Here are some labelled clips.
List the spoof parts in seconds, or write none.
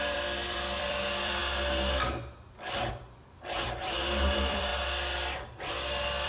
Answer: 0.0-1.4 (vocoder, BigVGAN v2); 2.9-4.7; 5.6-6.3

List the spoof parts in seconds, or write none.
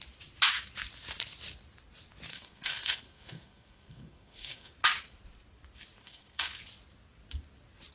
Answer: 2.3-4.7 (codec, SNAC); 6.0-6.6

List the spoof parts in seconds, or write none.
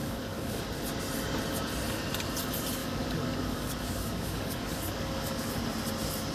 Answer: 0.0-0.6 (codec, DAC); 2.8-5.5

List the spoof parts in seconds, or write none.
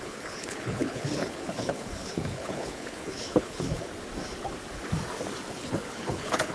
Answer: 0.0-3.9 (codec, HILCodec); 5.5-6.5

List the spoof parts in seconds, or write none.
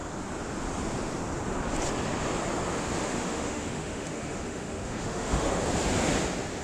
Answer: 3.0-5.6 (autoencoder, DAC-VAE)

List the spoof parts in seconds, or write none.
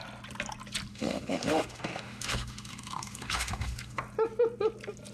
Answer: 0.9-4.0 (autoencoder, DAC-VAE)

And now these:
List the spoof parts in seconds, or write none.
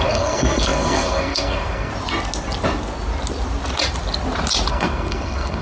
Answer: 0.0-1.9 (codec, SNAC); 4.7-5.6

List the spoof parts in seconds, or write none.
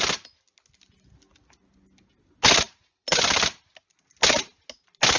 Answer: none